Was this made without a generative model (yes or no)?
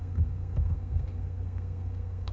no